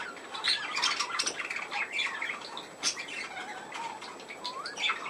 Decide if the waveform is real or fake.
real